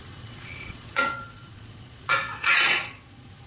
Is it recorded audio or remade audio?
remade